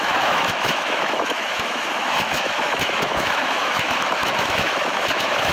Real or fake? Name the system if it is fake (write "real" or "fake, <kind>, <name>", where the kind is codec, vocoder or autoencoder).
fake, autoencoder, DAC-VAE